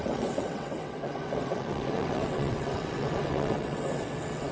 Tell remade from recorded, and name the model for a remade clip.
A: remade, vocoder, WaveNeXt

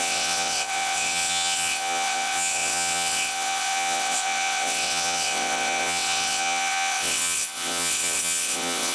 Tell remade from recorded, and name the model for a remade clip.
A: remade, vocoder, WaveNeXt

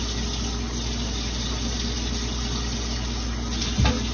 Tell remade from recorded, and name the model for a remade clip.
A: recorded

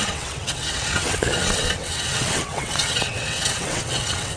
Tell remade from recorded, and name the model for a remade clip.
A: remade, vocoder, WaveNeXt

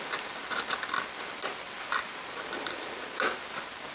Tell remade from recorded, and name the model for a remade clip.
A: recorded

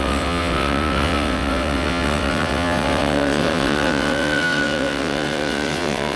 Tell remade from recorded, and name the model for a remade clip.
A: remade, vocoder, WaveNeXt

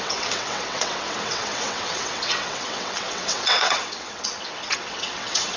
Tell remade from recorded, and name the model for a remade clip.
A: remade, vocoder, WaveNeXt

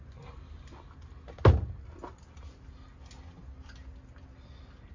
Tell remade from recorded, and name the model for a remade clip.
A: recorded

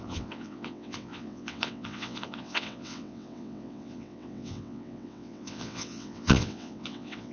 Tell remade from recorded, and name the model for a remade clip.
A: remade, vocoder, WaveNeXt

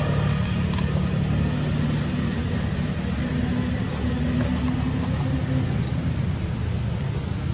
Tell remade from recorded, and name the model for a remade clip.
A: recorded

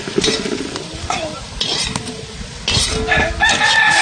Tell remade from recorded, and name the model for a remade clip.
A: recorded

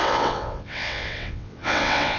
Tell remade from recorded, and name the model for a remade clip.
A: remade, vocoder, WaveNeXt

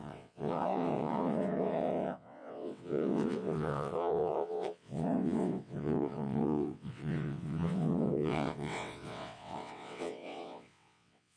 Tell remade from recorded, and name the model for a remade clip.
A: remade, vocoder, WaveNeXt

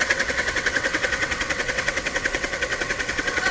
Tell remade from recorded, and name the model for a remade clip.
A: remade, vocoder, WaveNeXt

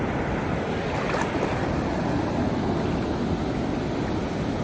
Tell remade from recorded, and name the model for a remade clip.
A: recorded